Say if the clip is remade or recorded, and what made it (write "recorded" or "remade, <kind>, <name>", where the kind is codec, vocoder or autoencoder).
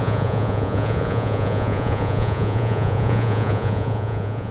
remade, vocoder, Vocos